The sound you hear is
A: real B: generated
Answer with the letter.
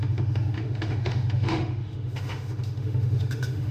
B